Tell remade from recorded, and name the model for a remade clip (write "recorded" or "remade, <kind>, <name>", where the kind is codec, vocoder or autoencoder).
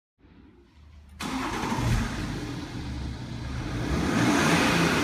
recorded